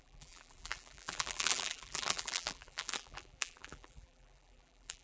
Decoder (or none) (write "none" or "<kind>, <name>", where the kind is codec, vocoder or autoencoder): vocoder, BigVGAN v2